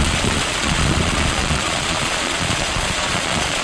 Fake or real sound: fake